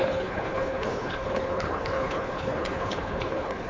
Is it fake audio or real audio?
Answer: fake